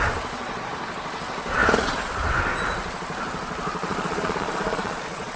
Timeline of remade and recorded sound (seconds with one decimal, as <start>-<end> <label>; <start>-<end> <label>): 0.0-3.8 recorded; 3.8-5.4 remade